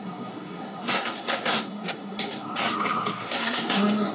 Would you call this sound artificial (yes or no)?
yes